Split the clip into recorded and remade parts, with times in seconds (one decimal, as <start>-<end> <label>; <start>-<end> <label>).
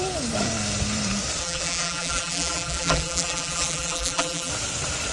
0.0-1.4 recorded; 1.4-4.5 remade; 4.5-5.1 recorded